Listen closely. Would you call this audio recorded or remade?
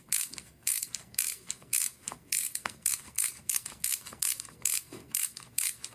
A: remade